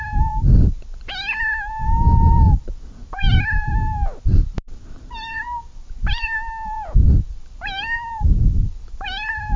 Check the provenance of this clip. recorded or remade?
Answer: remade